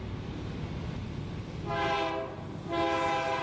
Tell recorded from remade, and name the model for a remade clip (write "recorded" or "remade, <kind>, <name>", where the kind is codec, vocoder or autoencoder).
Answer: recorded